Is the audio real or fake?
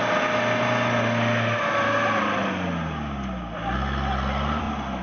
real